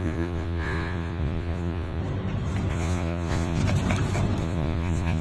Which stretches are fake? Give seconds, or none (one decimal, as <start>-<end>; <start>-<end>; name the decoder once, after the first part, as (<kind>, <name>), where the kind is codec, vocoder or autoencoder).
0.0-2.0 (vocoder, Vocos); 2.7-3.6; 4.4-5.2